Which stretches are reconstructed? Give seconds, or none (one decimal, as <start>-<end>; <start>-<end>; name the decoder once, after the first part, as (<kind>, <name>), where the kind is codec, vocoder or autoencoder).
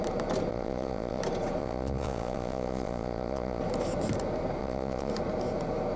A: 0.5-1.2 (vocoder, Vocos); 1.6-3.6; 4.6-5.1